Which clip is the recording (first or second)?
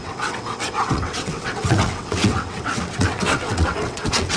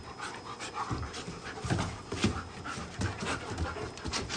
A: second